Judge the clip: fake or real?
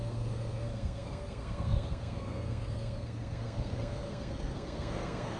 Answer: fake